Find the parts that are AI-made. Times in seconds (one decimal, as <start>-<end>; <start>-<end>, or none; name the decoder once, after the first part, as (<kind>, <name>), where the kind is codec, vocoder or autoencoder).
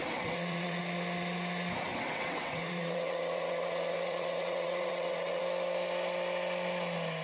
0.0-0.8 (vocoder, WaveNeXt); 1.9-5.4